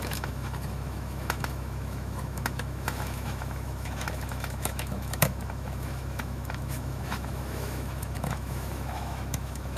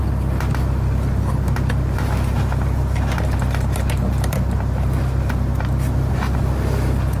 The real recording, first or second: second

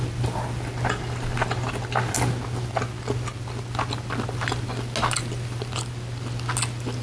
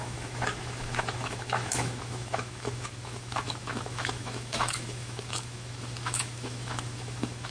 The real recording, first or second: first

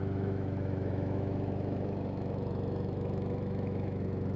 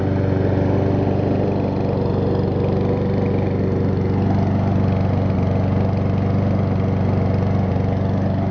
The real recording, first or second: second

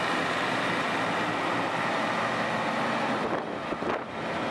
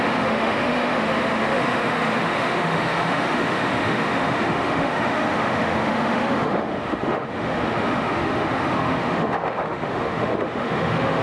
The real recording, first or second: first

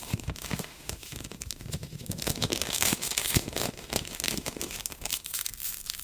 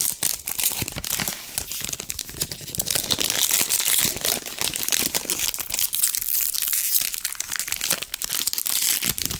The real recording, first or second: second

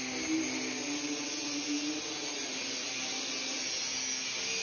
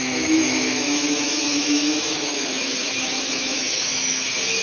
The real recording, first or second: first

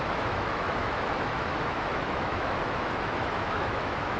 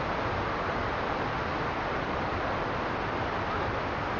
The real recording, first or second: second